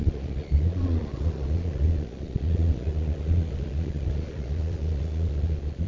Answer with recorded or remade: remade